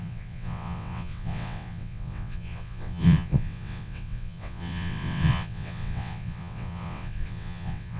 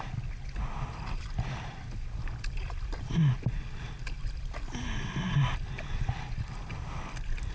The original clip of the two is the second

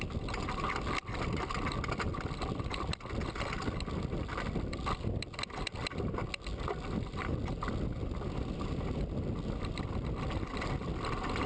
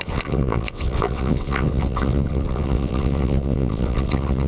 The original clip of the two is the first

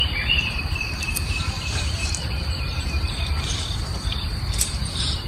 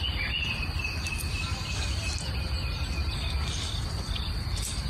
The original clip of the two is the second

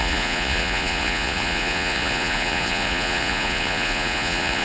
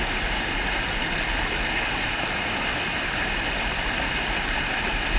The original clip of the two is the second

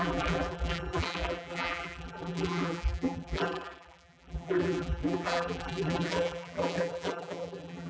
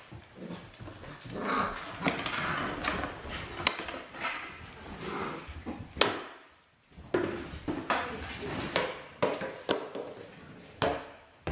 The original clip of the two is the second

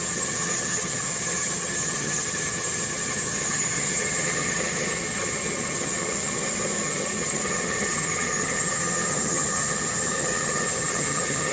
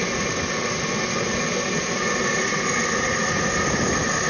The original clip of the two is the second